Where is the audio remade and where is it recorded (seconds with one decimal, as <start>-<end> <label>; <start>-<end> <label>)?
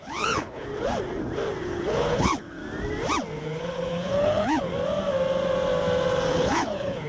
0.0-0.7 remade; 0.7-1.6 recorded; 1.6-2.6 remade; 2.6-3.4 recorded; 3.4-4.7 remade; 4.7-6.3 recorded; 6.3-7.1 remade